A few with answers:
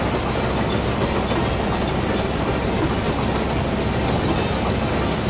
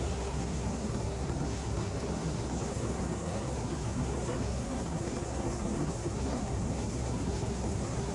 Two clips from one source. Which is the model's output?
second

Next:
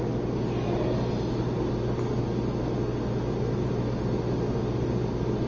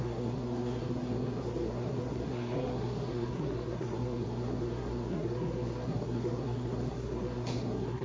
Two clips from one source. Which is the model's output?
second